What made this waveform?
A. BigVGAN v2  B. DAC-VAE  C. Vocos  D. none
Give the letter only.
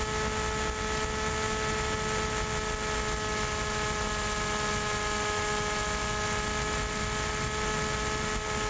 D